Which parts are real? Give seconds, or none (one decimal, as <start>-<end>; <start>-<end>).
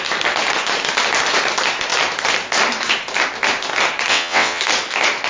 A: 0.0-4.1; 4.6-5.3